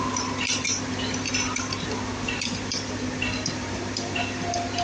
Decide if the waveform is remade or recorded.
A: remade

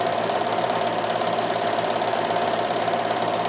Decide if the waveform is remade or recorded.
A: remade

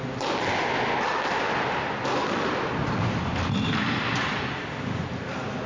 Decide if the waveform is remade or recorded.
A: recorded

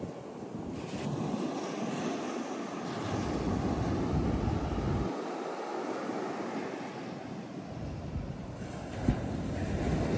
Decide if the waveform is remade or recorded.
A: recorded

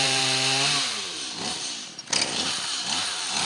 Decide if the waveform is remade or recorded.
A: remade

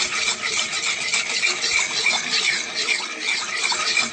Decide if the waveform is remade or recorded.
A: recorded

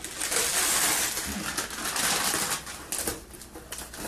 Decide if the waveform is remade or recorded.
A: recorded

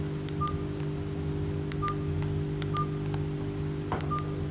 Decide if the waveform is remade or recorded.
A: recorded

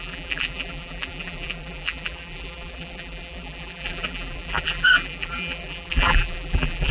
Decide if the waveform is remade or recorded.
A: remade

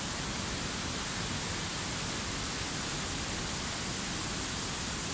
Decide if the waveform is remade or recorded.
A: recorded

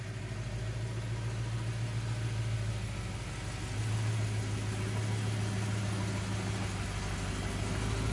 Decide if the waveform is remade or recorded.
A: recorded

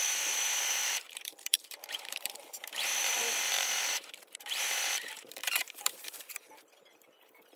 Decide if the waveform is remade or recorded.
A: remade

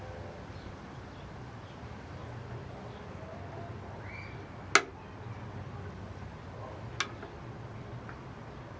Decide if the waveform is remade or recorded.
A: recorded